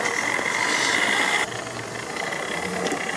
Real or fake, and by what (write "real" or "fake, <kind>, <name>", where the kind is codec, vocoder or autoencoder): real